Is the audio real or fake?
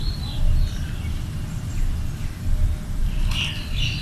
fake